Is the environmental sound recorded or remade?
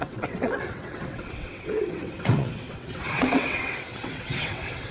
remade